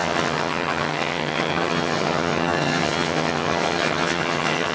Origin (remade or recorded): remade